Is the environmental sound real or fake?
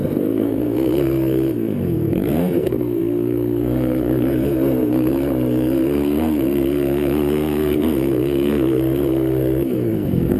fake